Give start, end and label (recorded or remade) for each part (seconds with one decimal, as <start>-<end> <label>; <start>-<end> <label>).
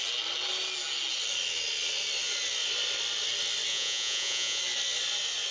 0.0-3.7 recorded; 3.7-4.6 remade; 4.6-5.5 recorded